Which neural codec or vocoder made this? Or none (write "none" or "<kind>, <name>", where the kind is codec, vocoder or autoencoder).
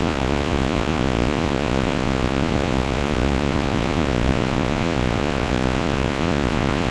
vocoder, Vocos